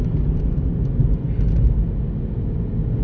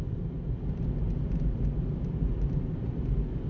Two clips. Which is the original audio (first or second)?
first